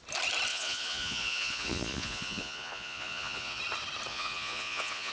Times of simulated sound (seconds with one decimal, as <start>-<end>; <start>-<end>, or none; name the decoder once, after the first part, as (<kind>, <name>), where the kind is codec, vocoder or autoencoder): 0.5-3.6 (vocoder, Vocos); 4.1-5.1